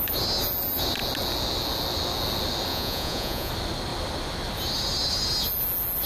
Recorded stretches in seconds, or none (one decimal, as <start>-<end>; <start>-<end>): 0.0-2.7; 3.5-6.1